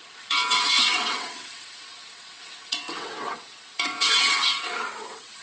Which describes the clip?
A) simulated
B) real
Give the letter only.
A